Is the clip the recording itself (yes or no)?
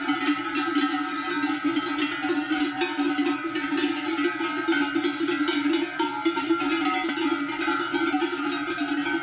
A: yes